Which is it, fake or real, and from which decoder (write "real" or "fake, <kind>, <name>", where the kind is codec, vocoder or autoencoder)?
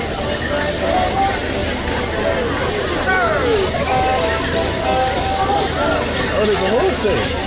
real